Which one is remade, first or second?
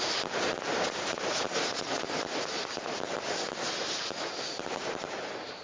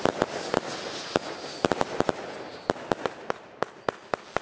first